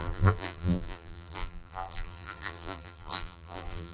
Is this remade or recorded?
remade